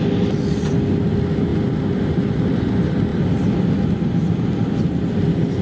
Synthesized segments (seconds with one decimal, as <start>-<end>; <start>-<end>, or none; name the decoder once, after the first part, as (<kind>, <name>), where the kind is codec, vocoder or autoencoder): none